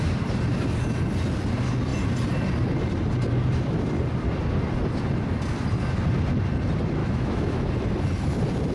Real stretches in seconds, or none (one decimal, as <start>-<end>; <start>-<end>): 0.0-7.0; 7.7-8.7